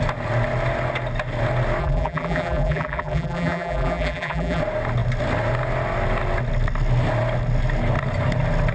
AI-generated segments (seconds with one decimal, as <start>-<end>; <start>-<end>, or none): 1.8-4.6